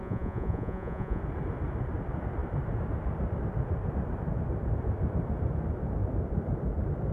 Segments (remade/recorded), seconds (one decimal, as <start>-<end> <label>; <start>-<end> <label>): 0.0-1.2 remade; 1.2-7.1 recorded